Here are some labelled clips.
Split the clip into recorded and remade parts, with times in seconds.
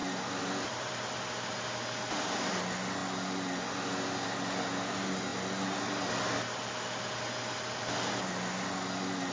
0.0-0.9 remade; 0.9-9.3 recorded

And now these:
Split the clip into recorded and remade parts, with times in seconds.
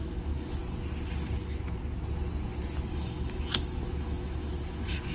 0.0-0.6 remade; 0.6-2.9 recorded; 2.9-5.1 remade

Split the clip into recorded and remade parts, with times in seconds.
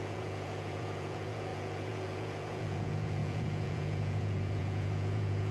0.0-5.5 remade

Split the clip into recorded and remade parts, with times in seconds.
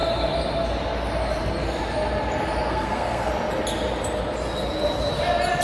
0.0-2.7 recorded; 2.7-3.3 remade; 3.3-5.6 recorded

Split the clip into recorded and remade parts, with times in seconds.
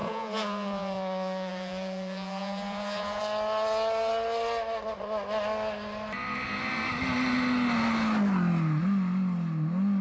0.0-3.2 remade; 3.2-10.0 recorded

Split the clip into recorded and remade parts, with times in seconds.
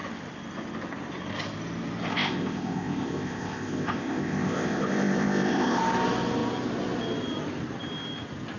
0.0-2.1 recorded; 2.1-5.8 remade; 5.8-8.6 recorded